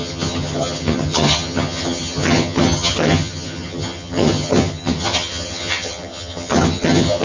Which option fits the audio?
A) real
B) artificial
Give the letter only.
B